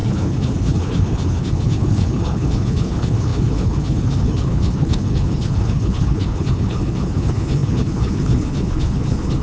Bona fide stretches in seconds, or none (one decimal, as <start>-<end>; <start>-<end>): none